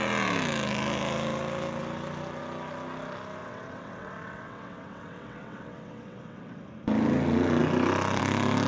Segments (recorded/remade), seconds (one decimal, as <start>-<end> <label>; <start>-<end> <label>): 0.0-3.4 recorded; 3.4-6.6 remade; 6.6-8.7 recorded